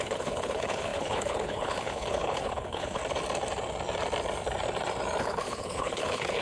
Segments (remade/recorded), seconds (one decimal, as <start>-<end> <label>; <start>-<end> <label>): 0.0-3.0 remade; 3.0-5.2 recorded; 5.2-6.4 remade